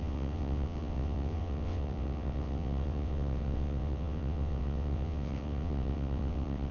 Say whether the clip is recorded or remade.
remade